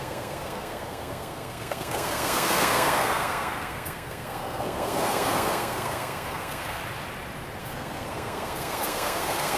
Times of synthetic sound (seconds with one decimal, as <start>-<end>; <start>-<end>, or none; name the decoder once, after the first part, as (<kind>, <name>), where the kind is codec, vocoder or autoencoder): 0.0-6.8 (codec, SNAC); 7.6-9.6

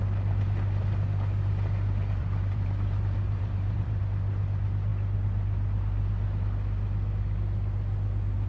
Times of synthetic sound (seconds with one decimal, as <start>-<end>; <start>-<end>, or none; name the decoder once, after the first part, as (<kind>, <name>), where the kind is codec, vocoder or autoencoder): 2.2-4.0 (vocoder, BigVGAN v2)

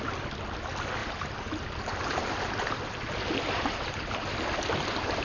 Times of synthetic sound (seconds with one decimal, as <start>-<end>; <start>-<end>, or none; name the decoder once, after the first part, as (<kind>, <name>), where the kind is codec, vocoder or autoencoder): 1.0-4.1 (vocoder, BigVGAN v2)

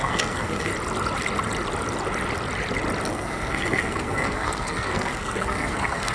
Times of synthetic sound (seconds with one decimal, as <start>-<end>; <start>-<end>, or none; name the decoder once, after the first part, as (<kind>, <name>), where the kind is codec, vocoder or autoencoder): 0.0-0.7 (codec, SNAC); 3.1-6.1

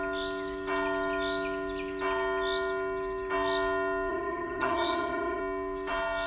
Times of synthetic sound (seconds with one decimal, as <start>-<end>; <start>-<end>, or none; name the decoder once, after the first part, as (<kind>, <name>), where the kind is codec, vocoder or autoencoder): 4.1-5.4 (vocoder, HiFi-GAN)

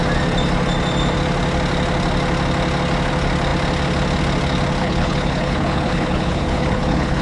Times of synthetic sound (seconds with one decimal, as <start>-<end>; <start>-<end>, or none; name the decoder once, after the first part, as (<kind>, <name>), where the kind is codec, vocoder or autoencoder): 4.8-7.2 (codec, HILCodec)

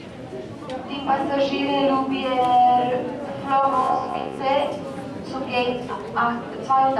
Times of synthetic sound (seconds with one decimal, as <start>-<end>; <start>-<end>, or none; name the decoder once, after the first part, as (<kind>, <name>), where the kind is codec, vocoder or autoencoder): 3.8-4.4 (vocoder, Vocos)